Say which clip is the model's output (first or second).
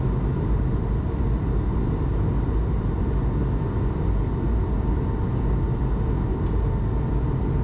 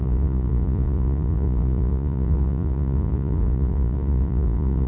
second